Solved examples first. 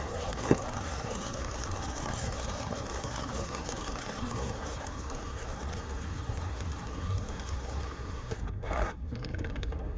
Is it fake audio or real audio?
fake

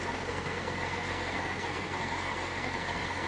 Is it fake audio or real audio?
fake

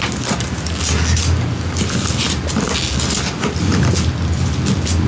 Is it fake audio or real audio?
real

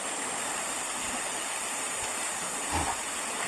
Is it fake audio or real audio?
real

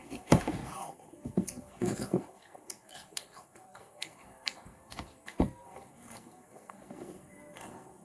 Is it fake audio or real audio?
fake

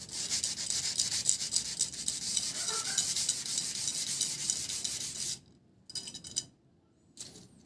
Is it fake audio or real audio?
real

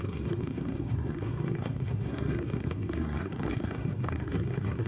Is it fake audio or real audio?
fake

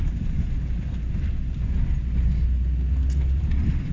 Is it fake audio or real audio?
real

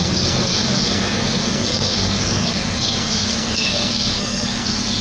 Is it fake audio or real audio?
fake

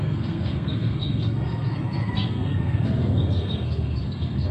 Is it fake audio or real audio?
fake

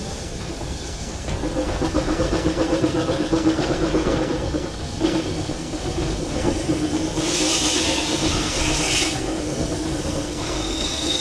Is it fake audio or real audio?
fake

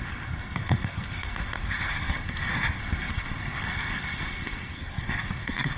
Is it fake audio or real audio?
fake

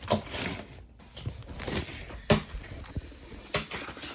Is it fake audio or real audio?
real